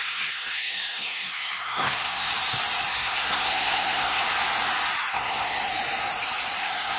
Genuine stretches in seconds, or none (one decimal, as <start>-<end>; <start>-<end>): 2.3-2.9; 4.2-5.1; 5.6-6.6